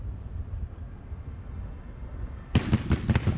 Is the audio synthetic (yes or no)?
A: no